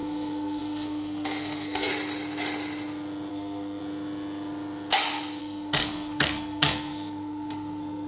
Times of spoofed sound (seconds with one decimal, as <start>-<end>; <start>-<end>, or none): 0.0-1.9; 3.3-3.8; 5.4-8.1